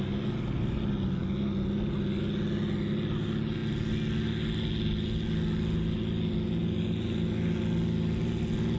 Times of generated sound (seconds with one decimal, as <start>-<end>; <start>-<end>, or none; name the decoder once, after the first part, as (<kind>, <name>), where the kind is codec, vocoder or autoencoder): none